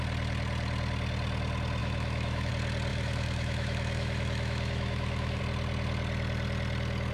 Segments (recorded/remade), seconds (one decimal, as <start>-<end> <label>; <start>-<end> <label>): 0.0-1.8 recorded; 1.8-2.5 remade; 2.5-2.9 recorded; 2.9-5.4 remade; 5.4-7.1 recorded